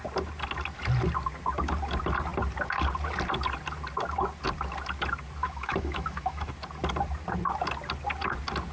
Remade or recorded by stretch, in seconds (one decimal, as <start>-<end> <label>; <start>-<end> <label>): 0.0-5.4 recorded; 5.4-6.5 remade; 6.5-8.7 recorded